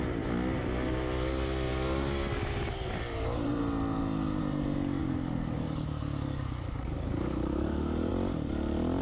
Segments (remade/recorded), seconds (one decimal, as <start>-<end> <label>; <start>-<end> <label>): 0.0-1.7 recorded; 1.7-2.4 remade; 2.4-5.0 recorded; 5.0-8.1 remade; 8.1-9.0 recorded